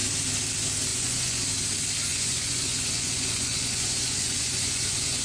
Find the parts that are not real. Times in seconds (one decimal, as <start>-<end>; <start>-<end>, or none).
0.9-1.4; 2.1-5.2